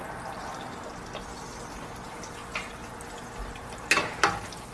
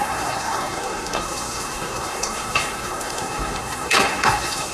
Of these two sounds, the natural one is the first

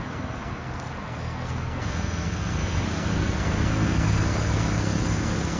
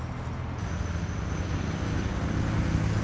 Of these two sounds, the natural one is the second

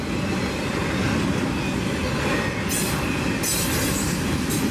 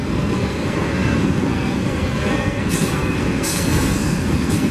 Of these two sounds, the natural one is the first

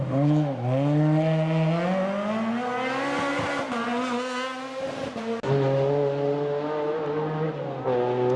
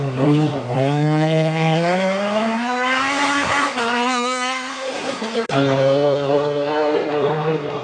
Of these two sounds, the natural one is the first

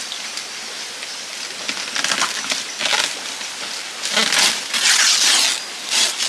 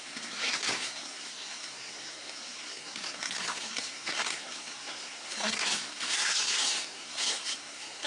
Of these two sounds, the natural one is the first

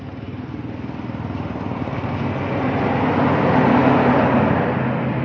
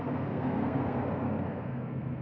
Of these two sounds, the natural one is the first